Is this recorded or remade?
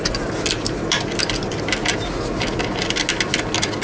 recorded